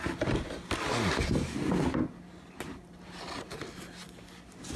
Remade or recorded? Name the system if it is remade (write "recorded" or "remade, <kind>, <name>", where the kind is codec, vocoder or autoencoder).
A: recorded